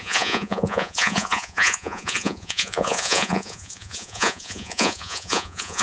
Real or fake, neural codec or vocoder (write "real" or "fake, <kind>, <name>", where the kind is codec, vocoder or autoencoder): fake, vocoder, Vocos